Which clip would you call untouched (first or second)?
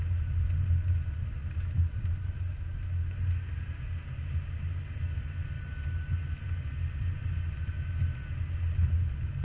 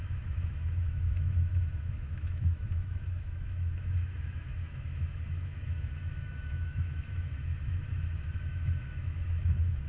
first